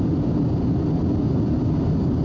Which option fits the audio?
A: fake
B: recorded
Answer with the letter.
B